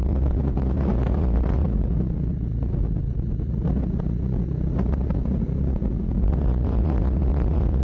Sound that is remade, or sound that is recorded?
remade